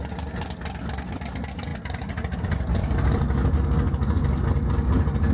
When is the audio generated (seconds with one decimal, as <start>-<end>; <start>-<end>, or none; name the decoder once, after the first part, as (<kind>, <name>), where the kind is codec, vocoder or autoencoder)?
none